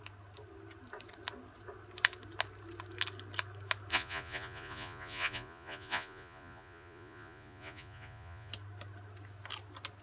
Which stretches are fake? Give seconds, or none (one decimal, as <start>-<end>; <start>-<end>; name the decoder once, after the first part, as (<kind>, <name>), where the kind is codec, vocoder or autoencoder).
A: 3.9-8.5 (vocoder, Vocos)